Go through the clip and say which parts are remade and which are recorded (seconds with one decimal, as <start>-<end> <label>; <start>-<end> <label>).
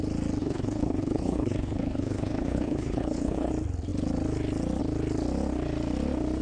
0.0-0.4 recorded; 0.4-3.5 remade; 3.5-6.4 recorded